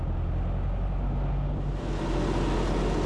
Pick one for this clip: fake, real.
real